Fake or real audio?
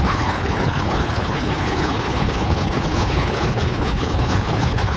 fake